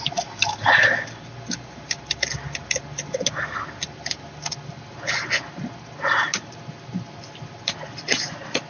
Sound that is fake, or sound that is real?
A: real